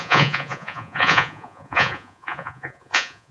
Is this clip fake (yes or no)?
yes